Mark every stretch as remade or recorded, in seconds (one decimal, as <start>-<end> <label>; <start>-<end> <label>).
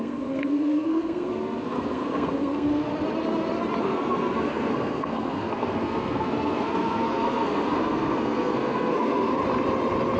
0.0-2.9 remade; 2.9-3.8 recorded; 3.8-9.4 remade; 9.4-10.2 recorded